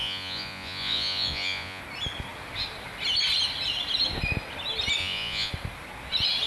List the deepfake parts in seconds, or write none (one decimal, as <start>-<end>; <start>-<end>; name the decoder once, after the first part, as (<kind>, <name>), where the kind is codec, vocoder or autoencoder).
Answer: 0.0-1.8 (vocoder, Vocos); 5.0-5.5